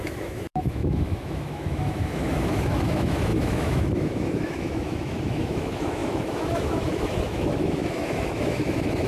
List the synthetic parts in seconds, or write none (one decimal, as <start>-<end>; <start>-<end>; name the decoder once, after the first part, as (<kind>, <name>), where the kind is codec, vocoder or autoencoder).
0.0-9.1 (autoencoder, DAC-VAE)